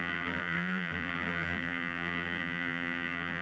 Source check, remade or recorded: remade